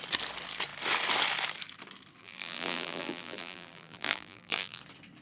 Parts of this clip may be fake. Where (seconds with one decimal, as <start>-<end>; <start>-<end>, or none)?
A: 2.2-4.8